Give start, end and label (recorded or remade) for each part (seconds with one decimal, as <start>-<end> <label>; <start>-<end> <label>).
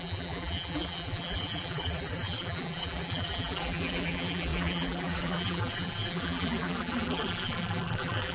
0.0-8.3 remade